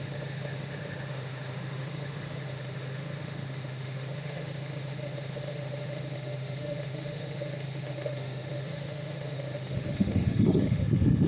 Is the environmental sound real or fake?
fake